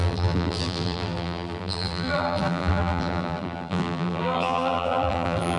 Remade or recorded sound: remade